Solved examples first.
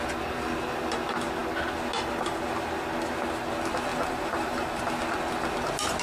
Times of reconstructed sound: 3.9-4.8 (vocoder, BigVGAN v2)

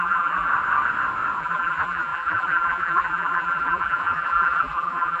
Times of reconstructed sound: 0.0-0.5 (vocoder, BigVGAN v2); 1.4-5.2

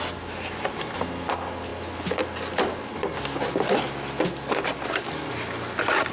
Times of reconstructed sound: none

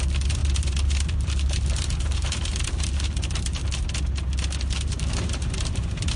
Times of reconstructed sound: 0.0-3.6 (vocoder, BigVGAN v2); 4.8-6.2

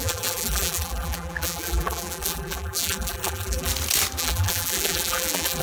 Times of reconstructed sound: 0.0-3.7 (vocoder, BigVGAN v2); 4.2-5.6

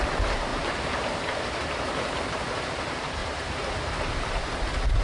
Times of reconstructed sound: 0.5-2.4 (vocoder, BigVGAN v2); 3.2-4.1

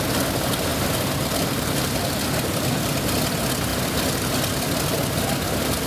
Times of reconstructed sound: 0.7-3.3 (vocoder, BigVGAN v2)

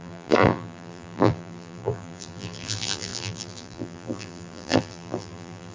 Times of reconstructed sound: 0.0-5.7 (vocoder, BigVGAN v2)